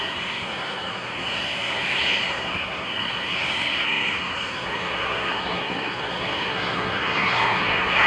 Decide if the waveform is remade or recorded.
remade